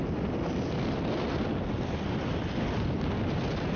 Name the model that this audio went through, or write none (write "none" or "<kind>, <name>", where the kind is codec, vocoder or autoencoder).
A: none